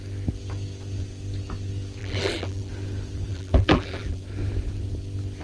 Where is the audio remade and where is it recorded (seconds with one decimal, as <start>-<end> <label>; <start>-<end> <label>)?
0.0-2.0 recorded; 2.0-2.7 remade; 2.7-3.3 recorded; 3.3-4.2 remade; 4.2-5.4 recorded